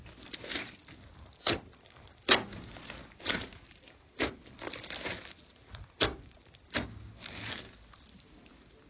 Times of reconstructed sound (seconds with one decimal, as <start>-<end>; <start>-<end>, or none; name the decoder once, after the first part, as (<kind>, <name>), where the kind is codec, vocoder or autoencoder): none